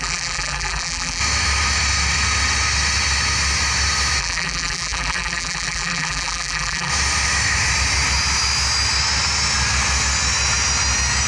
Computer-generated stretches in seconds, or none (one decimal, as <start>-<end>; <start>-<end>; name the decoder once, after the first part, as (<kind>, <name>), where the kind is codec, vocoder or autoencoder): 0.0-1.2 (vocoder, BigVGAN v2); 4.2-6.9